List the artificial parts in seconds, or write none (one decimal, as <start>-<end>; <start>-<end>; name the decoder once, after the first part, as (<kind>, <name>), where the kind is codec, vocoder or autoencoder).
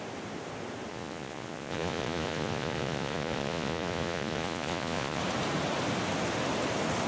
0.9-5.2 (vocoder, Vocos)